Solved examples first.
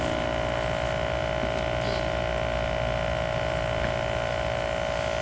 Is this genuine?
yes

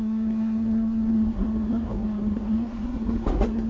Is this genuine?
no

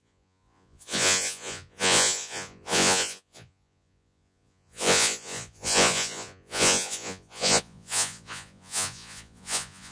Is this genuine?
no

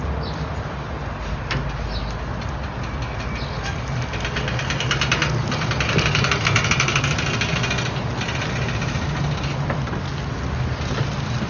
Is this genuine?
yes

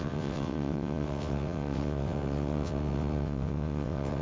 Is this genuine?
no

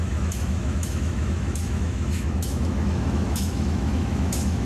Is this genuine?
no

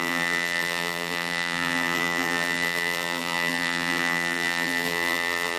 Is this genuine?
no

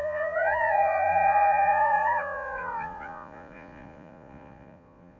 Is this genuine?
no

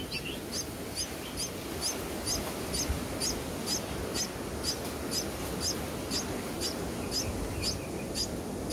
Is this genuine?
yes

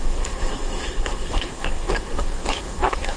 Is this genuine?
no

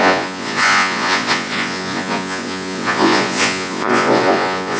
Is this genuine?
no